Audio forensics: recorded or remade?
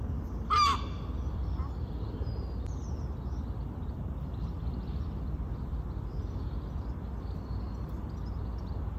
remade